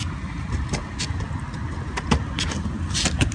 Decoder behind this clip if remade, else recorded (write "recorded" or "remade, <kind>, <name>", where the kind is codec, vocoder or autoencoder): recorded